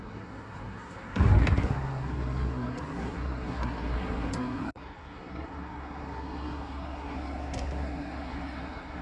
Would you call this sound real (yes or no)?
no